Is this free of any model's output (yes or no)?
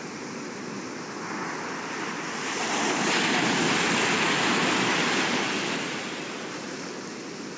yes